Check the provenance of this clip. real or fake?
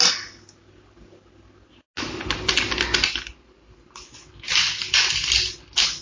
real